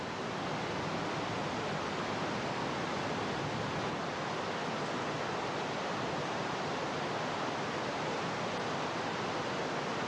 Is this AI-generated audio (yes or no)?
no